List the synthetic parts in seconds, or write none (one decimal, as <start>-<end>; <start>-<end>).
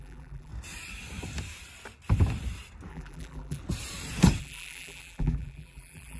0.0-0.5; 2.9-3.6; 4.4-6.2